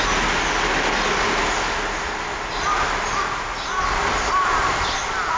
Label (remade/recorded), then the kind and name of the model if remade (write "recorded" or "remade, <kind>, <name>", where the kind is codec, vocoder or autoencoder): recorded